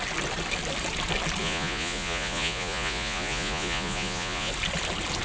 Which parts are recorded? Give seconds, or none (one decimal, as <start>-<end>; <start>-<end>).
0.0-1.4; 4.5-5.2